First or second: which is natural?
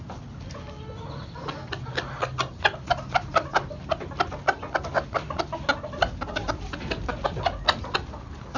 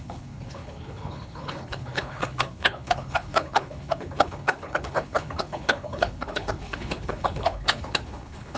first